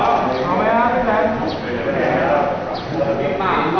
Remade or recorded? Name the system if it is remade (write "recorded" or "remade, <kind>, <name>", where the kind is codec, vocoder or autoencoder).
recorded